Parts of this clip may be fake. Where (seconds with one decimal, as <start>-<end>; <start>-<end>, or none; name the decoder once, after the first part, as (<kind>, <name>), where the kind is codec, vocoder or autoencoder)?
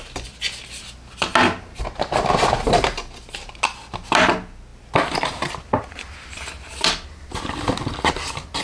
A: none